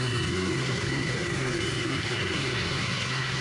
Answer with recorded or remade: remade